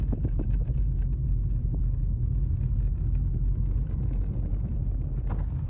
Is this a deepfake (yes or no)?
no